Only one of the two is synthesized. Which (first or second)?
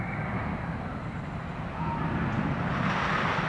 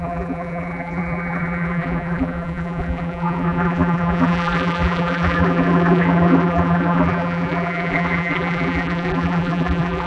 second